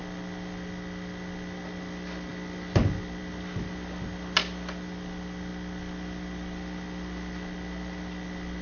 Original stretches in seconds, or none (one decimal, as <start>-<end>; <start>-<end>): 0.0-8.6